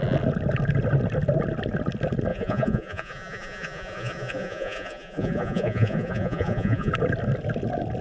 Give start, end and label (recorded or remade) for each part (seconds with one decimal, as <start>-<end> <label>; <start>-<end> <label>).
0.0-2.3 recorded; 2.3-6.9 remade; 6.9-8.0 recorded